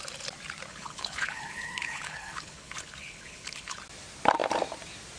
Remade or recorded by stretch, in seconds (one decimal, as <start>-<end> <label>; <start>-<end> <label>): 0.0-0.7 recorded; 0.7-3.8 remade; 3.8-5.2 recorded